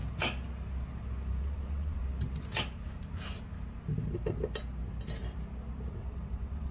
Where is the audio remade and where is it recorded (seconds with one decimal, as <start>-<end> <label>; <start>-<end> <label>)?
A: 0.0-1.4 recorded; 1.4-2.0 remade; 2.0-5.9 recorded; 5.9-6.7 remade